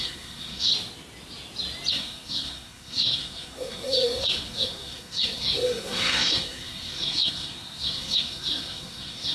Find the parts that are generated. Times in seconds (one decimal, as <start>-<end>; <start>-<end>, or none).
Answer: 0.0-0.7; 1.9-9.3